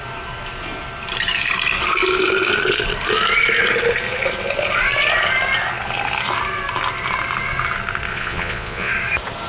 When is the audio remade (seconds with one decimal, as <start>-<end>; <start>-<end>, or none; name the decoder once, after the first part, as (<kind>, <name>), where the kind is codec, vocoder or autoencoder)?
8.1-8.9 (vocoder, Vocos)